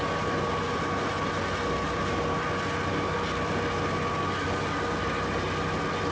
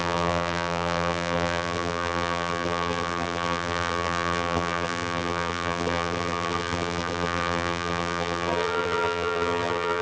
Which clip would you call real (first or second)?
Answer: first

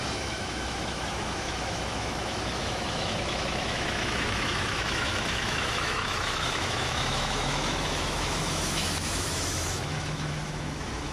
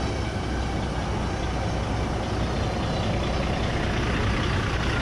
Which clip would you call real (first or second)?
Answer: second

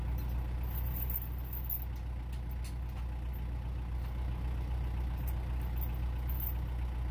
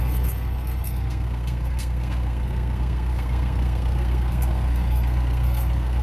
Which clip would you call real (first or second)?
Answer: first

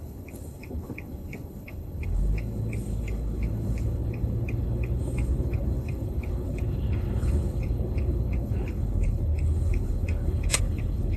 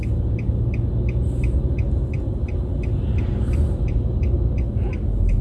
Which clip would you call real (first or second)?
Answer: second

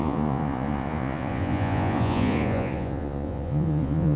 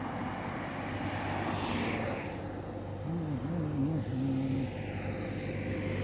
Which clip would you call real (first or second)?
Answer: second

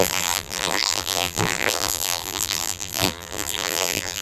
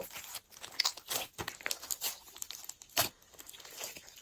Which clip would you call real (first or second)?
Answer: second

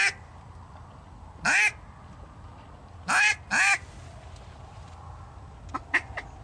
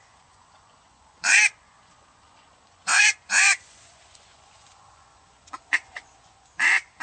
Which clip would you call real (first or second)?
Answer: first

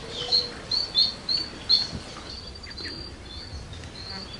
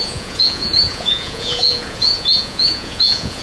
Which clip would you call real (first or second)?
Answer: first